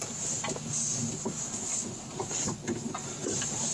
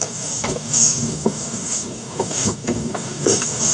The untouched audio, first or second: first